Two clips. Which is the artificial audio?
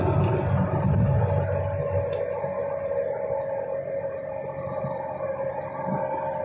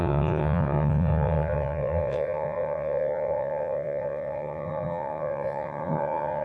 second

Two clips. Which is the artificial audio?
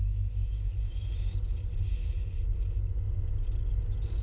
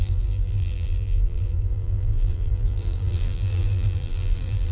second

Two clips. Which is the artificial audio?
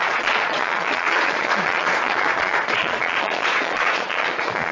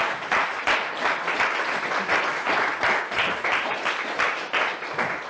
first